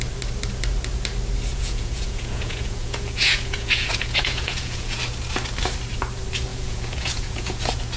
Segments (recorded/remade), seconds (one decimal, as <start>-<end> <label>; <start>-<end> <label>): 0.0-1.5 recorded; 1.5-5.0 remade; 5.0-6.5 recorded; 6.5-7.6 remade; 7.6-8.0 recorded